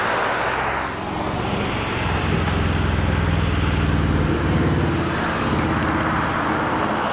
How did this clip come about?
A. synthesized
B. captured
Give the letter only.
B